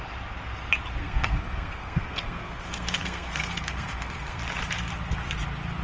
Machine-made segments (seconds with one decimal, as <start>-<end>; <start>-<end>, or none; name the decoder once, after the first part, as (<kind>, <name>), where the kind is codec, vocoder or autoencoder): 1.0-4.4 (codec, SNAC)